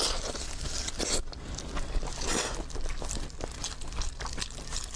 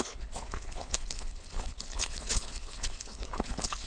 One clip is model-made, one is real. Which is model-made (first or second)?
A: second